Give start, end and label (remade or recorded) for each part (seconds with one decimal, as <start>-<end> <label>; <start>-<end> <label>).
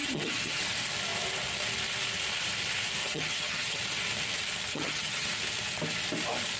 0.0-0.6 remade; 0.6-3.0 recorded; 3.0-3.8 remade; 3.8-4.7 recorded; 4.7-5.3 remade; 5.3-6.6 recorded